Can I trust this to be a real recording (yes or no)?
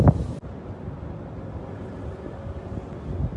yes